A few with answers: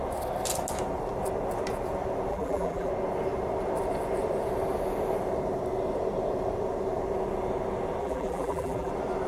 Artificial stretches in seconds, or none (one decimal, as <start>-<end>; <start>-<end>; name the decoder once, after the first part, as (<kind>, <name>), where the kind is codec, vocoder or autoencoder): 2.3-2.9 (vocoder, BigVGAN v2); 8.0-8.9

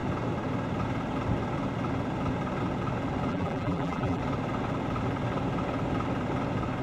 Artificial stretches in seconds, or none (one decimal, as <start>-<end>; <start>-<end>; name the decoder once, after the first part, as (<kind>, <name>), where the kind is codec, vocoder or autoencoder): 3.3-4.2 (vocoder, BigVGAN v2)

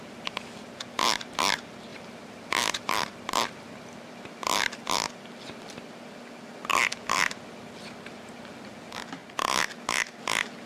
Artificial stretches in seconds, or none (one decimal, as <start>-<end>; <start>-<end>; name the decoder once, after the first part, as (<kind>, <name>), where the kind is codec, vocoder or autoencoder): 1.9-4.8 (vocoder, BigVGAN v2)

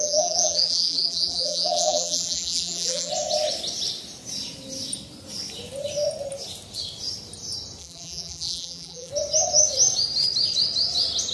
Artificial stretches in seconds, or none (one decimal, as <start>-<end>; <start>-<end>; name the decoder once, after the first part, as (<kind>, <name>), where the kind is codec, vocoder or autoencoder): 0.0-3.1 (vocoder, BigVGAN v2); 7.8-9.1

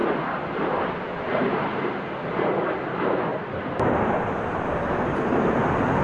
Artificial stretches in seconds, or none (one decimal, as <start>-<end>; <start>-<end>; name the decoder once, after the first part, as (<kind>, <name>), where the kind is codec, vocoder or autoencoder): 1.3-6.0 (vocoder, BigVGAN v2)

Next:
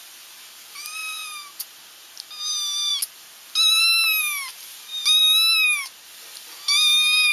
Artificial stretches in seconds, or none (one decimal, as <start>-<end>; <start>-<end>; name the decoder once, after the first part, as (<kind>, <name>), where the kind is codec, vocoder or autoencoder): 4.5-5.2 (vocoder, BigVGAN v2)

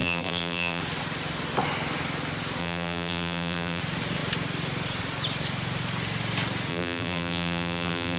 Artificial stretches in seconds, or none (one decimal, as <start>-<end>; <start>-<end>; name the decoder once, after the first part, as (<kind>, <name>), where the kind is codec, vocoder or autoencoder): 0.0-0.8 (vocoder, BigVGAN v2); 2.6-3.8; 6.7-8.2

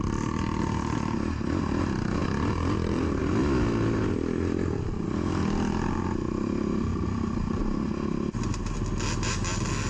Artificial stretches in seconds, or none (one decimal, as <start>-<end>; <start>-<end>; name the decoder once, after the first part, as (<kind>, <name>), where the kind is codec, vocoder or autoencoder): 6.9-7.6 (vocoder, BigVGAN v2)